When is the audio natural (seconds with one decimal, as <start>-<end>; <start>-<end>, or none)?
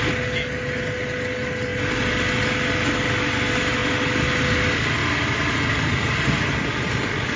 0.0-7.4